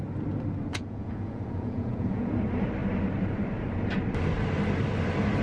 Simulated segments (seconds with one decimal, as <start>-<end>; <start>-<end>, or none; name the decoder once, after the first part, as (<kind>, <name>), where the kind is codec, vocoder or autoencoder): 0.7-2.3 (vocoder, Vocos)